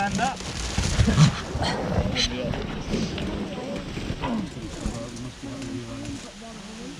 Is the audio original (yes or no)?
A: yes